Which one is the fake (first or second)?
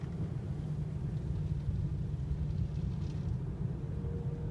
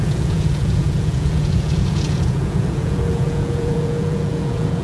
second